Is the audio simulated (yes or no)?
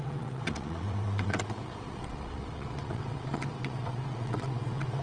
yes